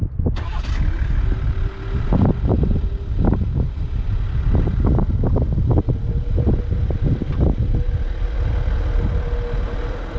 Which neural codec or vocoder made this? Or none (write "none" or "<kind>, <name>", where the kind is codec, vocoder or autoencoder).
none